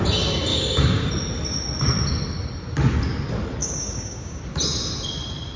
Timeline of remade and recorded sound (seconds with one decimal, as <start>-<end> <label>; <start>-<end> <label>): 0.0-0.5 recorded; 0.5-1.1 remade; 1.1-3.6 recorded; 3.6-4.4 remade; 4.4-5.6 recorded